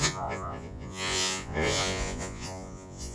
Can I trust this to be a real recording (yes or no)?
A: no